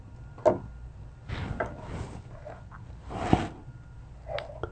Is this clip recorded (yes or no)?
yes